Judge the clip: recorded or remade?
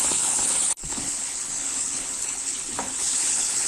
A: remade